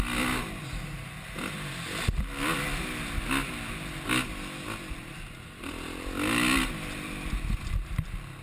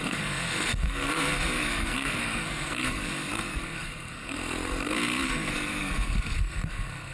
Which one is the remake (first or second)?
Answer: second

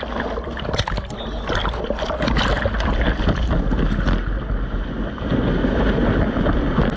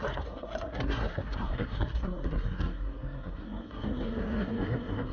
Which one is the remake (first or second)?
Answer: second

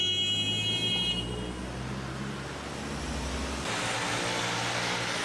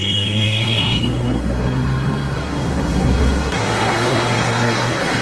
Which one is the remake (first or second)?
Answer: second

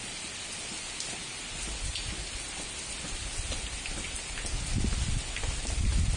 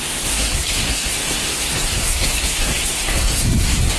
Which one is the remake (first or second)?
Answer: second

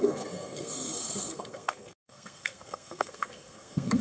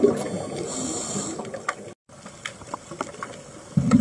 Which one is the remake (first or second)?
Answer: first